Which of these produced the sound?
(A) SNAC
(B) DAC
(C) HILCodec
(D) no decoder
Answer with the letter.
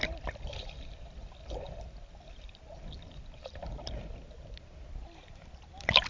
D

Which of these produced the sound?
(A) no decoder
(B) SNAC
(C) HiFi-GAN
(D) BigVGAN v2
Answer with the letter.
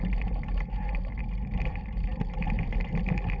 A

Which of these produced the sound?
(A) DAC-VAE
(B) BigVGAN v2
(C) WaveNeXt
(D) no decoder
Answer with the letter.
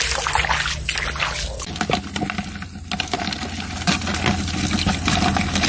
D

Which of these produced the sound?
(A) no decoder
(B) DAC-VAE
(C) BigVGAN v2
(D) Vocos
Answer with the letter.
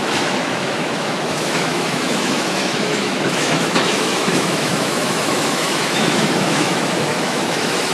B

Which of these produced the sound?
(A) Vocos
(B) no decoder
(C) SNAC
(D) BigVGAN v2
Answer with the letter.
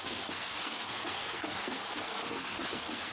C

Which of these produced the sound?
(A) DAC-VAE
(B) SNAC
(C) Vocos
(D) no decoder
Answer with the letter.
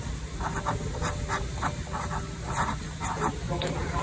D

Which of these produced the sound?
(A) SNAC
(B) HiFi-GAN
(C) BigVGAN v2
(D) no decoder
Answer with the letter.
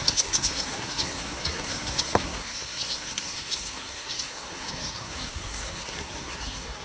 A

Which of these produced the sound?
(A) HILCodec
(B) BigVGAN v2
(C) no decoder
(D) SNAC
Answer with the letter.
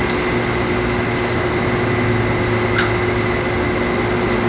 C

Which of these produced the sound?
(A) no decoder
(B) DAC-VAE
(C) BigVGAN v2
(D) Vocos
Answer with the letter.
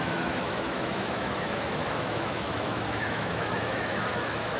B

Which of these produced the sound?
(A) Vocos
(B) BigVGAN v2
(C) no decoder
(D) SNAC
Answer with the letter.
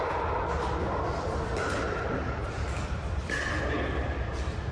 C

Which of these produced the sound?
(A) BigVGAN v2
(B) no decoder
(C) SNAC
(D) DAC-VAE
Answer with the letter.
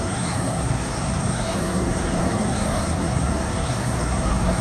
C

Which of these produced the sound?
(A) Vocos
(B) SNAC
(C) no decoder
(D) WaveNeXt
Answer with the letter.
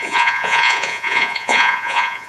A